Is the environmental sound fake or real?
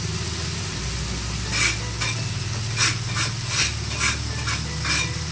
real